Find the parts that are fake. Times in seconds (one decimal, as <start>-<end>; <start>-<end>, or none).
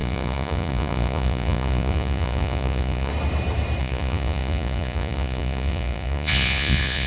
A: 0.0-3.1; 3.8-7.1